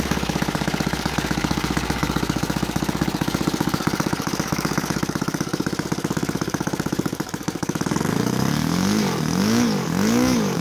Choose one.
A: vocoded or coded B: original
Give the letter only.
A